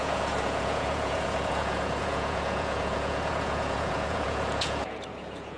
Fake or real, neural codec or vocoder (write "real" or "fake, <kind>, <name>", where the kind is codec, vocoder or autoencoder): fake, vocoder, Vocos